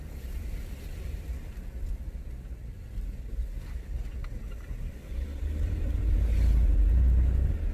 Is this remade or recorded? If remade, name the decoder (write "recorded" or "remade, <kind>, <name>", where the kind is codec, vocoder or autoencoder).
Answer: recorded